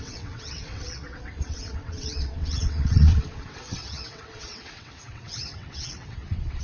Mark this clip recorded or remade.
remade